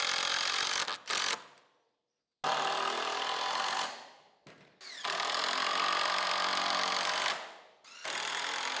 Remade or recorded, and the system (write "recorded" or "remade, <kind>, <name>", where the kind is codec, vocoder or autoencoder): recorded